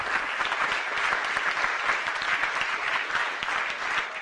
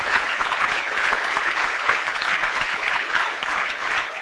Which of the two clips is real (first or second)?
first